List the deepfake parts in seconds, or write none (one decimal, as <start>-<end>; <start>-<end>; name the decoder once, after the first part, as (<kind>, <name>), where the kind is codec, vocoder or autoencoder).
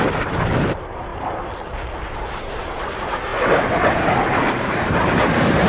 0.0-1.1 (vocoder, BigVGAN v2); 2.0-3.3; 4.5-5.7